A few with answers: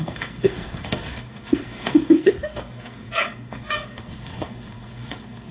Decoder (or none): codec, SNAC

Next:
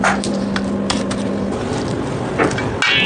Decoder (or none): none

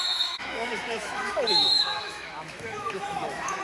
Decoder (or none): autoencoder, DAC-VAE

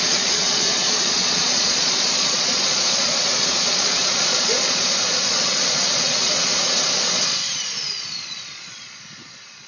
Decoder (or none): vocoder, Vocos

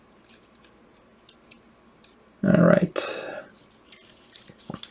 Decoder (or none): none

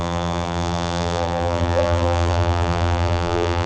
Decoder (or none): vocoder, BigVGAN v2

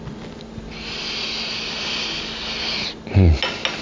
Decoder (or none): none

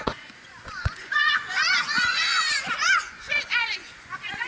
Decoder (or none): vocoder, Vocos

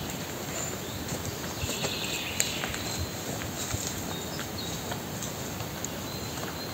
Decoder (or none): none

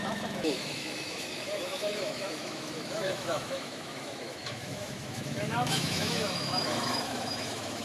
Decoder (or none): autoencoder, DAC-VAE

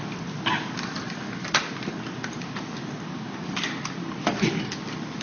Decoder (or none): none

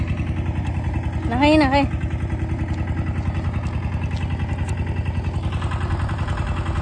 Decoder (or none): none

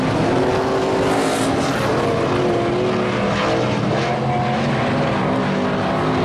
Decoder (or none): none